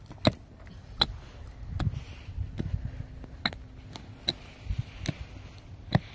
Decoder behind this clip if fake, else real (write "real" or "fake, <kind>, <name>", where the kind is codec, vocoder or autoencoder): real